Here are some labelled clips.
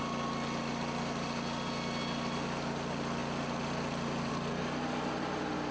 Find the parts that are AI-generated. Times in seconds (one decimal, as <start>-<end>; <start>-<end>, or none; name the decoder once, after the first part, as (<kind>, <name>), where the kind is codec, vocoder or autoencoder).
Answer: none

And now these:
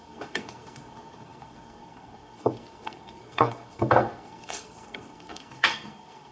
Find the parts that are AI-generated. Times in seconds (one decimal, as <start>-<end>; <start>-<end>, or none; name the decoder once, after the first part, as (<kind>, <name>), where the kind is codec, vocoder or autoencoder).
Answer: 0.0-6.3 (codec, SNAC)

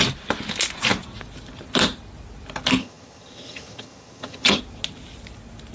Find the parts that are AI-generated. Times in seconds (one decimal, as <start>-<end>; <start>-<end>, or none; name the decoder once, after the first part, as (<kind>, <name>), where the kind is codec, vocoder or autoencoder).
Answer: 2.8-4.6 (vocoder, HiFi-GAN)